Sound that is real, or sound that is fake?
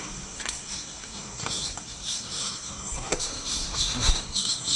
fake